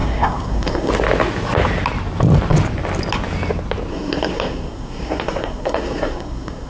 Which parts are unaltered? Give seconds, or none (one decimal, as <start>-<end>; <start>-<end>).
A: 0.9-3.9